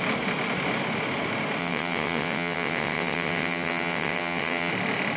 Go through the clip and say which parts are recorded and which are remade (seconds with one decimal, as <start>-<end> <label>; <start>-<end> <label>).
0.0-1.6 recorded; 1.6-4.7 remade; 4.7-5.2 recorded